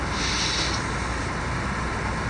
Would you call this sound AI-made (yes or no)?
no